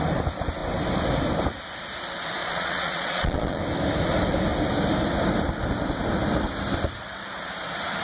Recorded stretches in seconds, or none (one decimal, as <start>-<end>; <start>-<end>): 0.0-2.4; 3.6-8.0